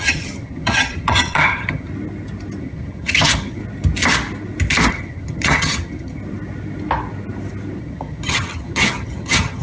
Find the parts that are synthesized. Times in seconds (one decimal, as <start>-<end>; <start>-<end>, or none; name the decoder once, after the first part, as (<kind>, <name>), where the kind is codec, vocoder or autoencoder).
0.0-1.9 (vocoder, HiFi-GAN); 2.6-3.6; 4.9-6.2; 7.8-9.6